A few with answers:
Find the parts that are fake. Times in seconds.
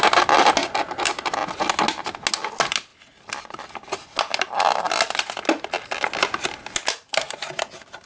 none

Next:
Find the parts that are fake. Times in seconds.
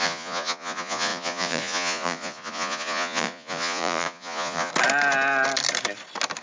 0.0-4.7 (vocoder, Vocos)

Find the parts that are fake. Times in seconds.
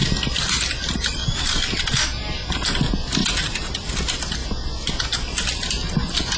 3.2-3.9 (vocoder, Vocos)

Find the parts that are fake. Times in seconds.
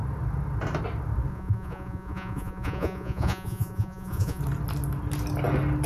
1.3-4.4 (vocoder, Vocos)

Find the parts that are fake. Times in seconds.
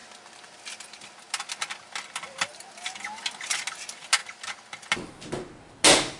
none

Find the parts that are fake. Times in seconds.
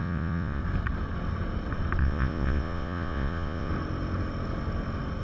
0.0-0.6 (vocoder, Vocos); 2.0-3.7